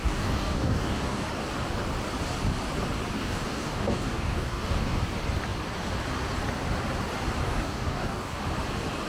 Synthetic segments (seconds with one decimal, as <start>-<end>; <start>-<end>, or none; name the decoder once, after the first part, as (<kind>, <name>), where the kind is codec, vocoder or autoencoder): 0.0-1.3 (codec, DAC); 3.2-5.0; 7.4-8.4